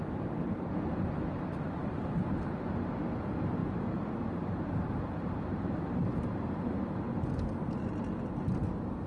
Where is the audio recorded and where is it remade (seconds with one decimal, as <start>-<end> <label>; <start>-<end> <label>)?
0.0-1.8 recorded; 1.8-2.3 remade; 2.3-3.6 recorded; 3.6-6.9 remade; 6.9-9.1 recorded